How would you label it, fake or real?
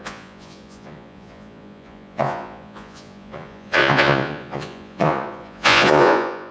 fake